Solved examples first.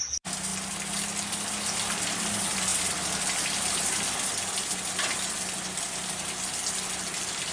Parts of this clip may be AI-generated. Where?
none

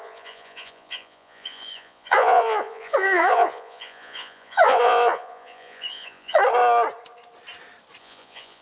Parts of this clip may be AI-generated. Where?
0.0-6.4; 8.0-8.6

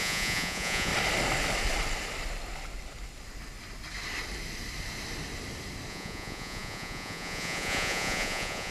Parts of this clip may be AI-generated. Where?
0.0-0.9; 5.9-8.7